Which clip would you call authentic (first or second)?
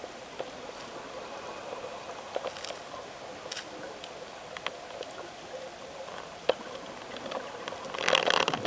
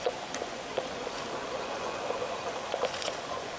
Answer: first